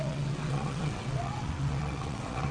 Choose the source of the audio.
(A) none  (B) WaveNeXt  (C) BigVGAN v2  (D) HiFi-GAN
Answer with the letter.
B